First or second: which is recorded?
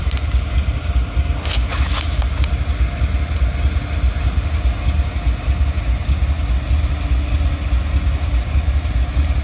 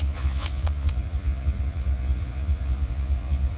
first